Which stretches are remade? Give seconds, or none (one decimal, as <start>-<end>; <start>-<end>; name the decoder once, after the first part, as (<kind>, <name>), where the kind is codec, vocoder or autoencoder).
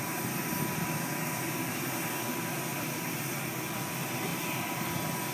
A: 4.3-4.8 (vocoder, BigVGAN v2)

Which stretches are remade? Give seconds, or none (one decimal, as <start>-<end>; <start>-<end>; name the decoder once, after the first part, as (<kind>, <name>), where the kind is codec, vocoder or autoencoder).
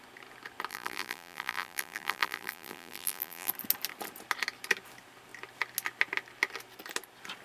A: 0.7-3.5 (vocoder, BigVGAN v2)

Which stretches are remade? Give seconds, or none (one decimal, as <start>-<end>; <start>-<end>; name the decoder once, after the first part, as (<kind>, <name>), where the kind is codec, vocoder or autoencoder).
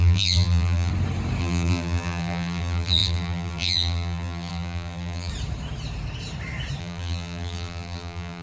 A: 0.0-0.9 (vocoder, BigVGAN v2); 1.4-5.3; 6.8-8.4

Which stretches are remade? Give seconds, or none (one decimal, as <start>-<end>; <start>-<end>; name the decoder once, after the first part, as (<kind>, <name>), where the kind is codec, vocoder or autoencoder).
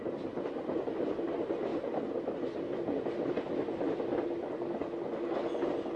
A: none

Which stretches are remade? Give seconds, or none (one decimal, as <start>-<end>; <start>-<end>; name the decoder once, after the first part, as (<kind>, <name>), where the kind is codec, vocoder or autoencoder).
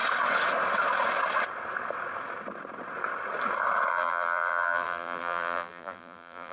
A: 3.9-6.5 (vocoder, BigVGAN v2)